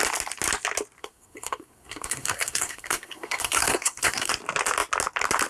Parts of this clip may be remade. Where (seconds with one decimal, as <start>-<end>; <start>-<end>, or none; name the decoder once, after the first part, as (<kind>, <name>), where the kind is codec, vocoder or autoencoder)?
1.0-4.3 (codec, SNAC)